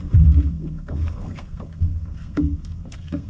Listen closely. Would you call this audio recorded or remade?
remade